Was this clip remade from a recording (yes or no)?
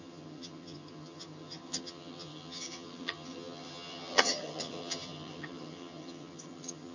yes